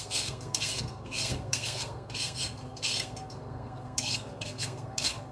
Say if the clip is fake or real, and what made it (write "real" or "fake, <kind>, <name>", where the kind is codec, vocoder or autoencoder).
fake, codec, SNAC